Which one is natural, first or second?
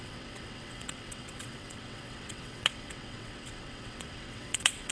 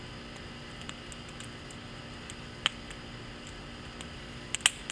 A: second